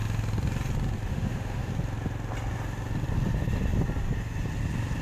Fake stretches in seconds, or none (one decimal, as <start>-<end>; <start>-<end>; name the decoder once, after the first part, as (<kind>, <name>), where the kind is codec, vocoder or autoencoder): 1.1-1.7 (autoencoder, DAC-VAE)